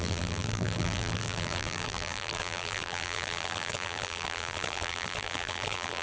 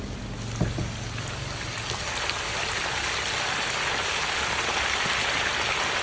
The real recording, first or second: second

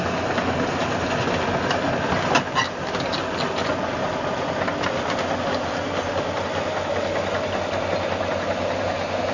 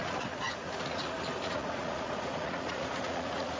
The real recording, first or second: first